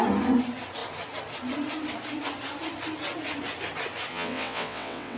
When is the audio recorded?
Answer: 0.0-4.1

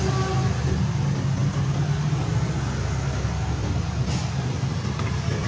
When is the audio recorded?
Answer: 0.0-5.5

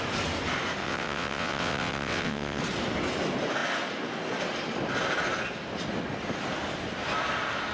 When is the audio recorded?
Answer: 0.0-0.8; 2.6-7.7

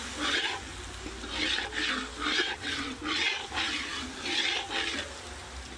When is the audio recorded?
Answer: 0.0-2.4; 3.0-5.8